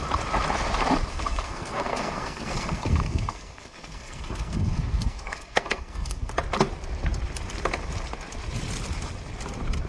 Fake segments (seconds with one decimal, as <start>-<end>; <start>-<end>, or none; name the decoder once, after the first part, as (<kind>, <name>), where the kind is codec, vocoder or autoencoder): 1.1-6.3 (codec, SNAC)